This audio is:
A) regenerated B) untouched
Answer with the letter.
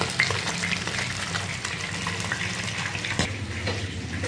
B